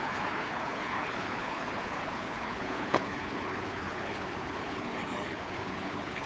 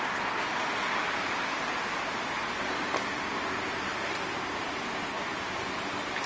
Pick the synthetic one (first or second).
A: first